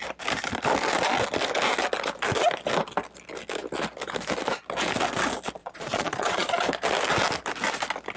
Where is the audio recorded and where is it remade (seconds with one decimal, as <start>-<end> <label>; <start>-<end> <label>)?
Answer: 0.0-5.6 recorded; 5.6-6.5 remade; 6.5-8.2 recorded